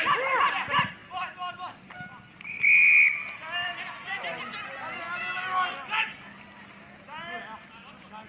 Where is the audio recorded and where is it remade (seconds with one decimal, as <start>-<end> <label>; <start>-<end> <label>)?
0.0-8.3 recorded